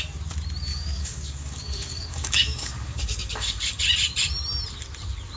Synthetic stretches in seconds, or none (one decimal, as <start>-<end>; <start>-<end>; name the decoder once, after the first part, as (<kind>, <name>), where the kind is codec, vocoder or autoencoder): 0.7-3.8 (codec, DAC)